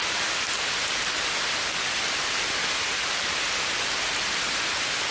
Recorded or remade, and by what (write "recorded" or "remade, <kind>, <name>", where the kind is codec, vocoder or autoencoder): recorded